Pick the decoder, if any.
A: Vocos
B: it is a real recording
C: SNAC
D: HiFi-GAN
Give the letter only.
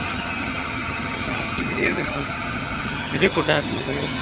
D